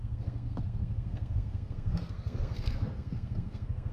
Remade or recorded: remade